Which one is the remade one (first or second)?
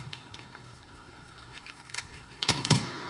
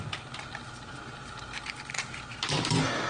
first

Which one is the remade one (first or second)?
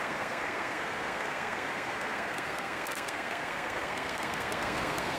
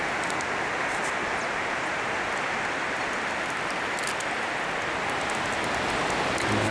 first